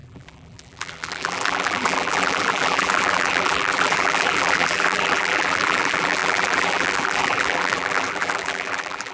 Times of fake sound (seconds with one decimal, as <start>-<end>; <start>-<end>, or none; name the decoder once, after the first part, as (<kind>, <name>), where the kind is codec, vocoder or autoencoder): 0.0-9.1 (vocoder, BigVGAN v2)